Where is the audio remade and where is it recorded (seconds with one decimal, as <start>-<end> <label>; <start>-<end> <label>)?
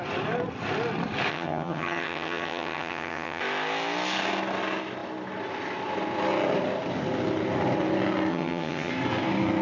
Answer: 0.0-1.3 recorded; 1.3-3.4 remade; 3.4-8.3 recorded; 8.3-8.9 remade; 8.9-9.6 recorded